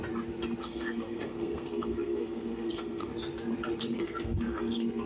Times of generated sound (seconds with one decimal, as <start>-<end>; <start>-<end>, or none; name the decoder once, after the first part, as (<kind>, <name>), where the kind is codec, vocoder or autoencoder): 0.6-3.1 (codec, SNAC); 3.8-5.1